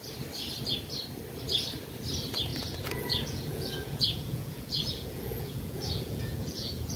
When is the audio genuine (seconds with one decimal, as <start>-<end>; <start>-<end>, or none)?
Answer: 0.0-2.5